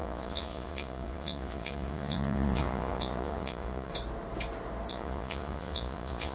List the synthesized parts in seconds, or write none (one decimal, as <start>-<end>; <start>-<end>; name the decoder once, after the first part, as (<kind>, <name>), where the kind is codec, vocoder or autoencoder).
0.0-3.9 (vocoder, Vocos); 4.9-6.3